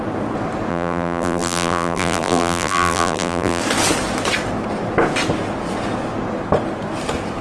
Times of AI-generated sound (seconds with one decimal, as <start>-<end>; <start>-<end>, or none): 0.7-3.6